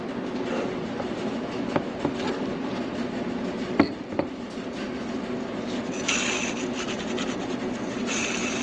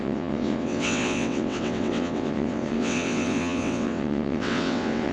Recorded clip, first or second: first